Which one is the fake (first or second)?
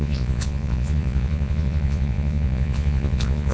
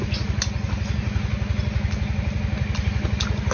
first